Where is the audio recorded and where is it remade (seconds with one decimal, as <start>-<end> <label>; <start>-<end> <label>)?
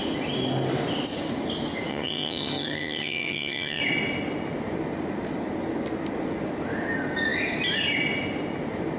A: 0.0-1.9 recorded; 1.9-3.8 remade; 3.8-9.0 recorded